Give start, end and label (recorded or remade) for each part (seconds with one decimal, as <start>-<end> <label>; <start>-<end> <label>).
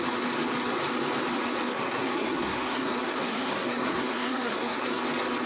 0.0-1.7 recorded; 1.7-5.0 remade; 5.0-5.5 recorded